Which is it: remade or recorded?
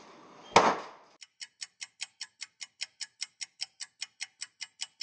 recorded